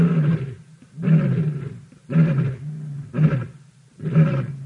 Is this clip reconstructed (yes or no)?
no